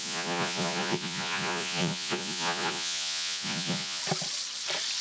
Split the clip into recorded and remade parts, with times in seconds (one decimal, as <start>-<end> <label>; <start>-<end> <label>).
0.0-4.0 remade; 4.0-5.0 recorded